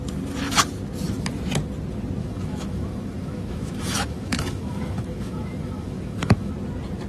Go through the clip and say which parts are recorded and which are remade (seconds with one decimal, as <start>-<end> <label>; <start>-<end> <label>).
0.0-2.2 recorded; 2.2-6.5 remade; 6.5-7.1 recorded

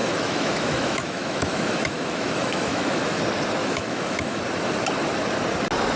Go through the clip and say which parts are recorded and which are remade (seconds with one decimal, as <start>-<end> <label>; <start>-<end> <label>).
0.0-3.2 remade; 3.2-3.6 recorded; 3.6-4.4 remade; 4.4-6.0 recorded

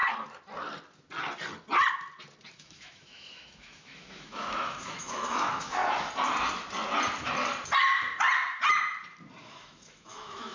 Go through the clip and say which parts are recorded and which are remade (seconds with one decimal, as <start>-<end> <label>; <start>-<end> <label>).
0.0-2.5 recorded; 2.5-5.8 remade; 5.8-9.4 recorded; 9.4-10.5 remade